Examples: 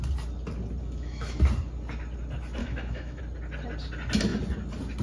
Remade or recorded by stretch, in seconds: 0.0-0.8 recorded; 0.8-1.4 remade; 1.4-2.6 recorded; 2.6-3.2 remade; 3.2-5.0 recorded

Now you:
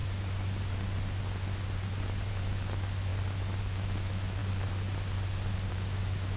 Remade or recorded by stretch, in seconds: 0.0-2.3 recorded; 2.3-3.1 remade; 3.1-3.6 recorded; 3.6-4.4 remade; 4.4-5.7 recorded; 5.7-6.4 remade

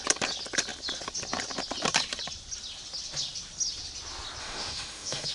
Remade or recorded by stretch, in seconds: 0.0-4.4 recorded; 4.4-5.3 remade

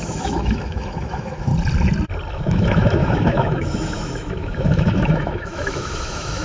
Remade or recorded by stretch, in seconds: 0.0-1.5 remade; 1.5-2.3 recorded; 2.3-6.4 remade

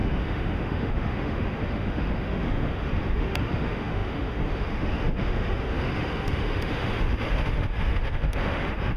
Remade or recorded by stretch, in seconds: 0.0-9.0 remade